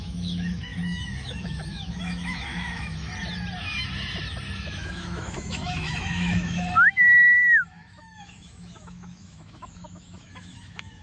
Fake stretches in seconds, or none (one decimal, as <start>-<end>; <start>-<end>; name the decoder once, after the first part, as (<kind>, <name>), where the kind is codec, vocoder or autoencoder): 0.0-3.1 (autoencoder, DAC-VAE); 4.6-11.0

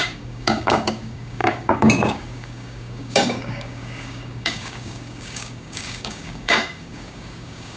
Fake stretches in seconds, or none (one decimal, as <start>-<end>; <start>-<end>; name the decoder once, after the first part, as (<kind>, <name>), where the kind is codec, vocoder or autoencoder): 0.0-7.8 (codec, DAC)

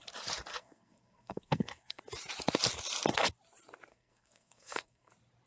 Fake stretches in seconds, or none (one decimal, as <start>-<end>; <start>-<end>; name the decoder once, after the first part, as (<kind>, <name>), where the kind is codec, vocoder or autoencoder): 0.5-2.0 (codec, SNAC); 3.9-5.1

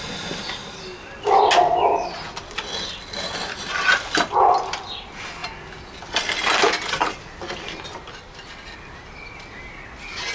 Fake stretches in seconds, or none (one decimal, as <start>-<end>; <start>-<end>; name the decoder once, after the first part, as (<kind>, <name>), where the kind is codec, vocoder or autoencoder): none

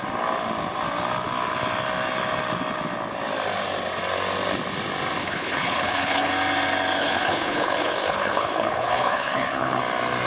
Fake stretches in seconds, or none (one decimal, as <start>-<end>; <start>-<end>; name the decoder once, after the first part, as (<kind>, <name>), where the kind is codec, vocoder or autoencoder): 5.2-6.3 (codec, HILCodec); 7.0-9.8

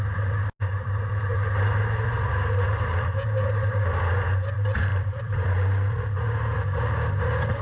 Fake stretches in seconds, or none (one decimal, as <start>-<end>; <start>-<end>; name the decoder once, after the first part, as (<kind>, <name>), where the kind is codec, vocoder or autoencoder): 4.9-6.0 (vocoder, BigVGAN v2)

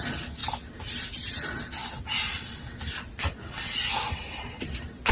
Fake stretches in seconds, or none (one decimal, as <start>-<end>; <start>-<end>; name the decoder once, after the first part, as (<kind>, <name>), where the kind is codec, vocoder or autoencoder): none

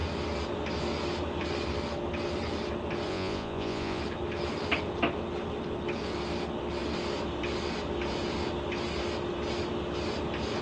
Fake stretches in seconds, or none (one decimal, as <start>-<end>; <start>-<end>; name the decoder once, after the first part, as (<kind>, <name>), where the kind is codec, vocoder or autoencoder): 3.1-4.0 (vocoder, Vocos)